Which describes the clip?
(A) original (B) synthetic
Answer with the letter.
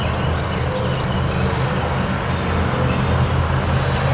A